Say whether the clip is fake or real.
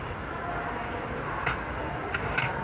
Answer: real